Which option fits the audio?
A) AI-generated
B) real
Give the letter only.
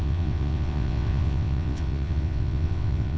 A